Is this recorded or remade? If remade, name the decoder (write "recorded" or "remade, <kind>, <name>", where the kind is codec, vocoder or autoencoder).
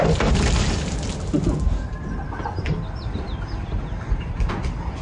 recorded